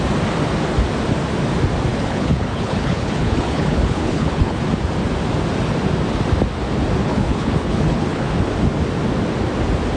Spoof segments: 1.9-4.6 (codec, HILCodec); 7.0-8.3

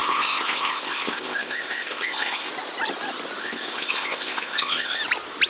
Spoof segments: 0.0-2.5 (codec, ZipCodec); 3.4-5.0

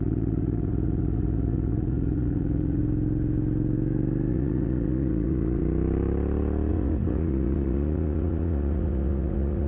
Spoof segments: 0.0-2.8 (vocoder, Vocos); 4.3-5.6; 6.7-9.7